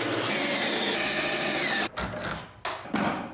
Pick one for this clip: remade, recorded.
recorded